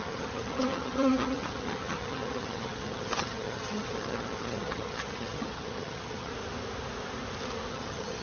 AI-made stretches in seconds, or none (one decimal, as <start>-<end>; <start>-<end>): 0.0-6.3; 7.7-8.2